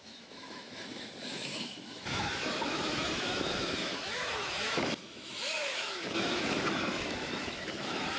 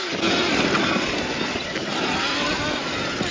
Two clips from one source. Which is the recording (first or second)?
second